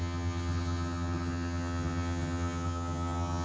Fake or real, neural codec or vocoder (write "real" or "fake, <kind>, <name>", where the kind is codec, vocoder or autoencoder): fake, vocoder, HiFi-GAN